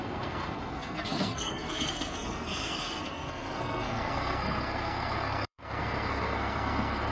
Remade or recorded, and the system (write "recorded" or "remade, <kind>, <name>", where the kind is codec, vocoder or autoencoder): remade, codec, SNAC